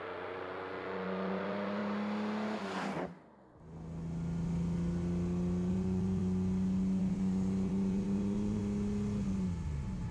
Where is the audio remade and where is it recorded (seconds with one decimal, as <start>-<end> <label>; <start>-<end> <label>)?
0.0-1.8 remade; 1.8-5.7 recorded; 5.7-6.2 remade; 6.2-7.0 recorded; 7.0-8.6 remade; 8.6-10.1 recorded